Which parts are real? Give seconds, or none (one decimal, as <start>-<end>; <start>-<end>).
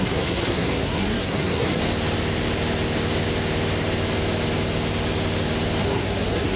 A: 1.8-5.8